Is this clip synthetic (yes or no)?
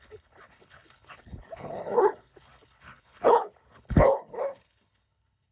yes